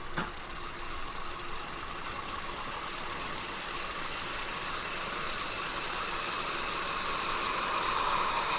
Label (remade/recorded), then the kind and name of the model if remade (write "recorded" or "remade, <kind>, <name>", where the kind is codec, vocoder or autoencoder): recorded